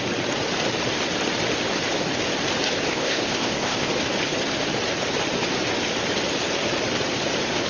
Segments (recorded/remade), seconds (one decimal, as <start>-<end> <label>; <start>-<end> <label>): 0.0-2.9 recorded; 2.9-3.9 remade; 3.9-7.7 recorded